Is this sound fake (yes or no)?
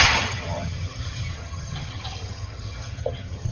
yes